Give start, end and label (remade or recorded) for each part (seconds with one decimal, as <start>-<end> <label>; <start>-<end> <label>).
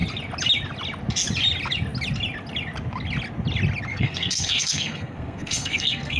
0.0-3.9 recorded; 3.9-6.2 remade